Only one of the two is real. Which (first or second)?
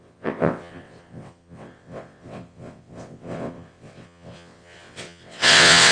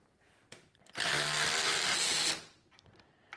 second